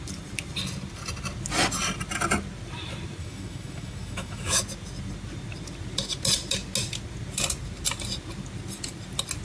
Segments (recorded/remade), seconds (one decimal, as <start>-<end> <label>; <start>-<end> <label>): 0.0-3.2 recorded; 3.2-4.6 remade; 4.6-9.4 recorded